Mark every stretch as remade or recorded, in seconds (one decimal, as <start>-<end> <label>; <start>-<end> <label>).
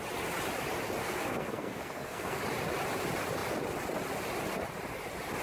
0.0-1.0 recorded; 1.0-2.4 remade; 2.4-5.4 recorded